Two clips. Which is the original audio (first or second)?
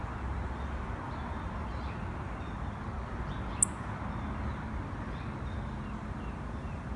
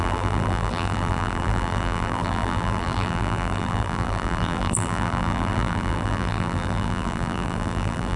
first